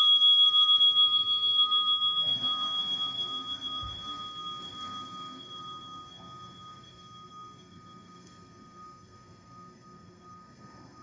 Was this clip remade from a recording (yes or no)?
yes